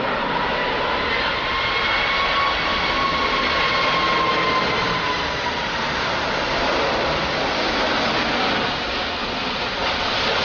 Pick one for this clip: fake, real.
real